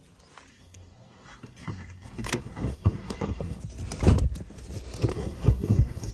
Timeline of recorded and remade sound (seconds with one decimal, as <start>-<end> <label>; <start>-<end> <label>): 0.0-0.5 recorded; 0.5-3.6 remade; 3.6-5.1 recorded; 5.1-6.1 remade